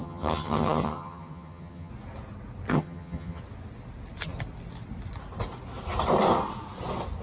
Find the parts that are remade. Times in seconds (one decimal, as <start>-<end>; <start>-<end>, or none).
0.0-1.9; 2.7-3.4